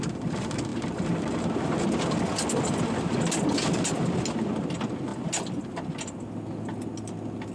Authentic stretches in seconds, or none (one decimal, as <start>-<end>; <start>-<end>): 0.0-7.5